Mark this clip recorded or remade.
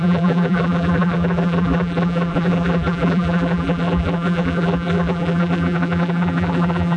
remade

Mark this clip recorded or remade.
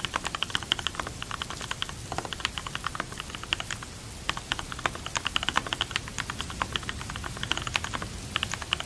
recorded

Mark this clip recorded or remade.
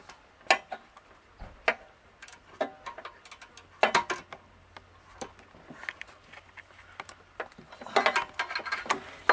recorded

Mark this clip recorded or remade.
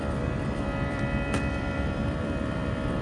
remade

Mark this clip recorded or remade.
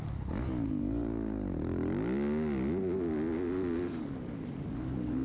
recorded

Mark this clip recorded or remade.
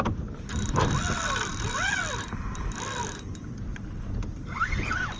recorded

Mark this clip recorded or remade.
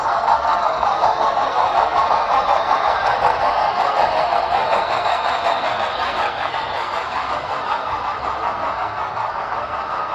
remade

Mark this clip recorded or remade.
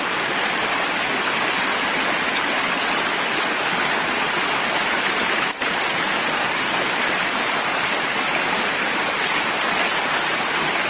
recorded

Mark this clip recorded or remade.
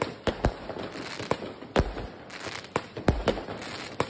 recorded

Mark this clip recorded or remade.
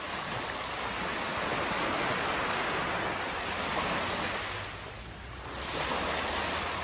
recorded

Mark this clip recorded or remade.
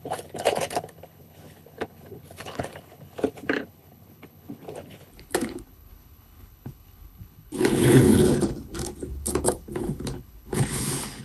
remade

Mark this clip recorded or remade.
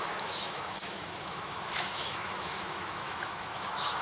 remade